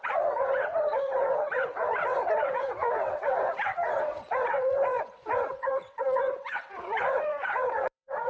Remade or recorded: remade